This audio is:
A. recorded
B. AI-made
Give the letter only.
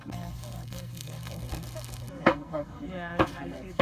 B